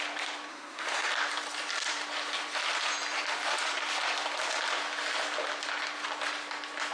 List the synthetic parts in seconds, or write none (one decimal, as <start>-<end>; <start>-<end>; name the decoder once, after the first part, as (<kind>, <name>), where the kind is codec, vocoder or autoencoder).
0.5-1.1 (codec, SNAC)